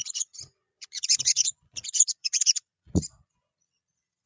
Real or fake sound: fake